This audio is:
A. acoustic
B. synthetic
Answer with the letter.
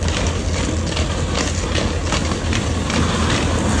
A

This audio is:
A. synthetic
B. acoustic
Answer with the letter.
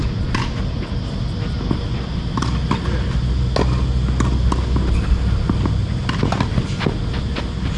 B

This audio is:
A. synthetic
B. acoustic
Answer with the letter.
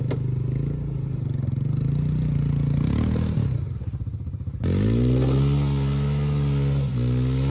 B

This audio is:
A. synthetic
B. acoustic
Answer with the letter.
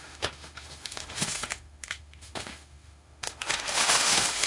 A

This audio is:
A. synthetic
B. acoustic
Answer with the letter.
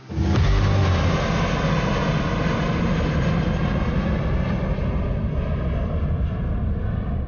B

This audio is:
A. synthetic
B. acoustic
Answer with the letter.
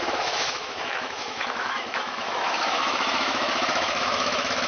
A